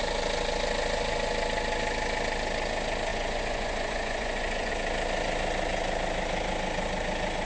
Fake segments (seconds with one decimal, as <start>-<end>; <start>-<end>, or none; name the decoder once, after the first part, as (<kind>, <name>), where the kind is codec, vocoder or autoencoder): 3.1-4.7 (vocoder, Vocos)